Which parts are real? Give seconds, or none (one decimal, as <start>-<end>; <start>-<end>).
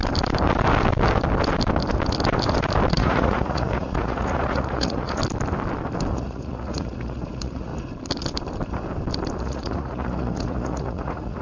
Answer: 0.0-2.9; 5.2-6.1; 7.7-9.4